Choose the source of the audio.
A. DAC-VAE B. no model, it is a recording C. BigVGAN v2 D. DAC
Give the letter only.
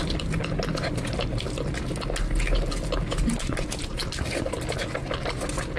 B